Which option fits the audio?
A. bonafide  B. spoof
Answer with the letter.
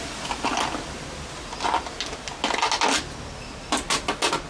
A